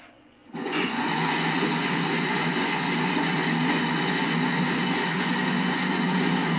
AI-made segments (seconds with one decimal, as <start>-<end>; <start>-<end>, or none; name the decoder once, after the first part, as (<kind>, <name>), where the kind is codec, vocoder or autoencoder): 0.0-6.6 (vocoder, Vocos)